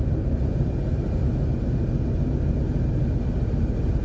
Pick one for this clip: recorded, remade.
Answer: recorded